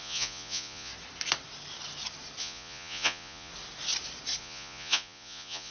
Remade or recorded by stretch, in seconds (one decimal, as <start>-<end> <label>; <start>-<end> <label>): 0.0-0.9 remade; 0.9-2.4 recorded; 2.4-3.5 remade; 3.5-4.4 recorded; 4.4-5.7 remade